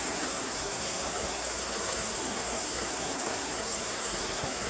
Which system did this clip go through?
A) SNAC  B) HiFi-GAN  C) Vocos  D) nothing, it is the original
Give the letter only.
A